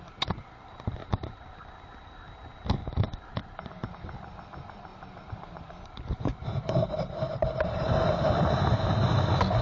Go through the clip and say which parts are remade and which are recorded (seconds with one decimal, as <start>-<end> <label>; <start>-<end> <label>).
0.0-1.0 recorded; 1.0-1.6 remade; 1.6-2.8 recorded; 2.8-3.9 remade; 3.9-4.9 recorded; 4.9-8.2 remade; 8.2-9.6 recorded